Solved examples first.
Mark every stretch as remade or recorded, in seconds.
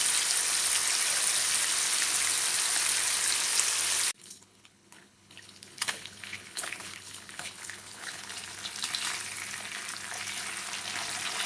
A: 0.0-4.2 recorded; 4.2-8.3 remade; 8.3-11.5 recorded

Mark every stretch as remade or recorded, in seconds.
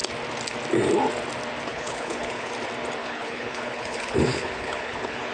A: 0.0-1.7 recorded; 1.7-2.5 remade; 2.5-3.0 recorded; 3.0-5.3 remade